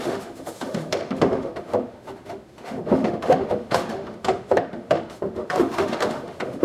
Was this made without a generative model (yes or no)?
no